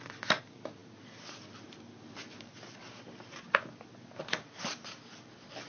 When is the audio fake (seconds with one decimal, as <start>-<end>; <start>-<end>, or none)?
none